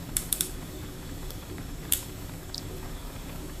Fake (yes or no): yes